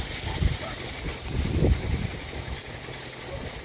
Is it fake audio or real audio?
real